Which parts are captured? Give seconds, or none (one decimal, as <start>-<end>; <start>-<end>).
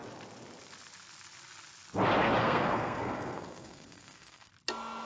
0.0-2.4; 4.5-5.1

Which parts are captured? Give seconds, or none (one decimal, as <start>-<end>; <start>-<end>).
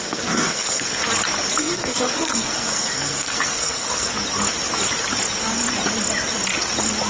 1.0-1.6; 4.1-7.1